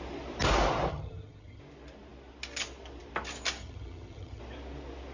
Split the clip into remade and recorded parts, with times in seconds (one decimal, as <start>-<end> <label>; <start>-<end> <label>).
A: 0.0-0.9 recorded; 0.9-1.6 remade; 1.6-3.6 recorded; 3.6-4.4 remade; 4.4-5.1 recorded